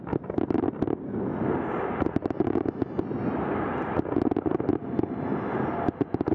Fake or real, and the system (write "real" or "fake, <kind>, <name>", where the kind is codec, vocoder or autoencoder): real